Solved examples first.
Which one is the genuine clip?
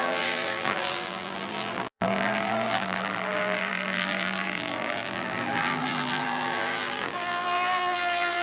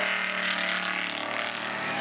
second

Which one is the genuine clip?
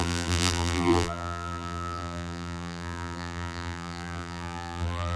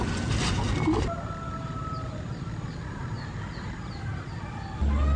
second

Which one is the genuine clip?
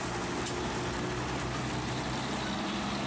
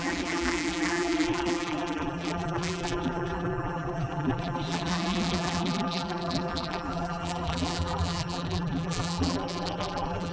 first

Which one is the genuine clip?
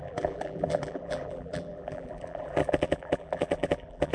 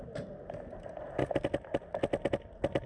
second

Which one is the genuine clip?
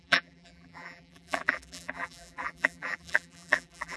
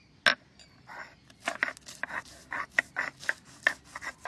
second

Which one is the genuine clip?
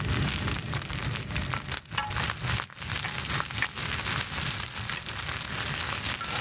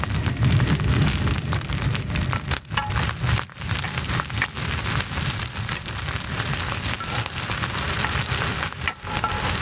first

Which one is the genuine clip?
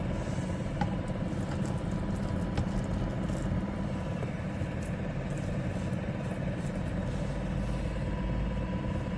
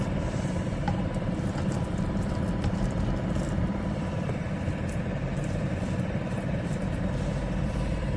first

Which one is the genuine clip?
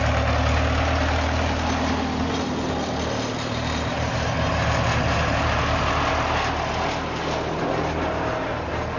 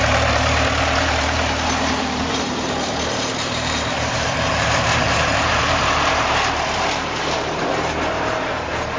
first